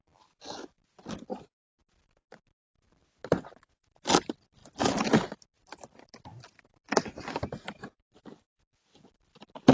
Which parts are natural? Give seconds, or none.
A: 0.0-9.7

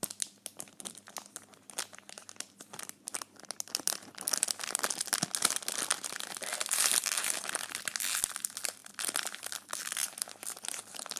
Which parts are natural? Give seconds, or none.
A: 0.0-11.2